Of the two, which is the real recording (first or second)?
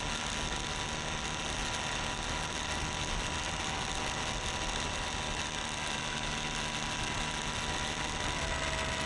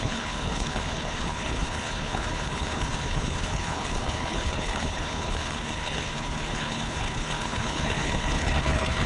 first